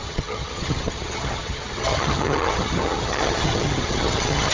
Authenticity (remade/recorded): remade